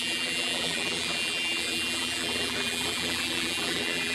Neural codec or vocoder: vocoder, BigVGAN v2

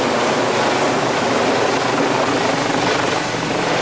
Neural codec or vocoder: none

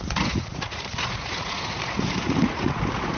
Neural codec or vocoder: vocoder, Vocos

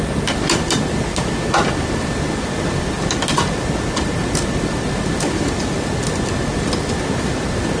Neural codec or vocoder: none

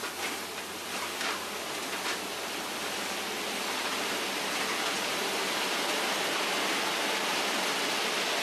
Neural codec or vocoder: none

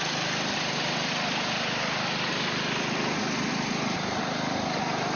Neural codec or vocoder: none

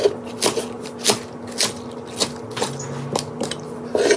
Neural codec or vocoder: none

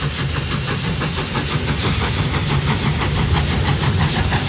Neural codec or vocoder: none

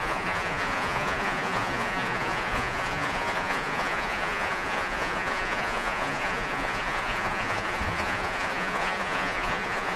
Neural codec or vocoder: vocoder, Vocos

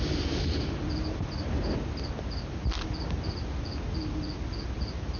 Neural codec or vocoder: none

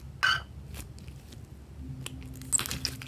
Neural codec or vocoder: none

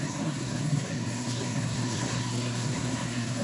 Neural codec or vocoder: codec, SNAC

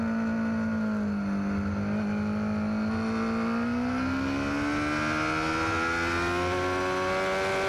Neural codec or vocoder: none